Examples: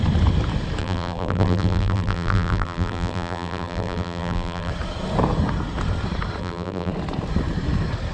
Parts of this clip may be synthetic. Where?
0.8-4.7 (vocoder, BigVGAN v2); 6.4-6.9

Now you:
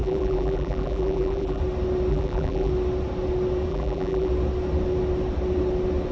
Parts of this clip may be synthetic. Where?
0.0-1.6 (vocoder, BigVGAN v2); 2.1-2.7; 3.7-4.3

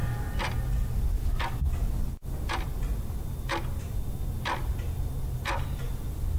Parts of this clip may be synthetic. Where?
none

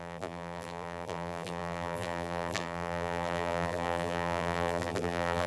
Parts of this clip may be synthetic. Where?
0.0-5.5 (vocoder, BigVGAN v2)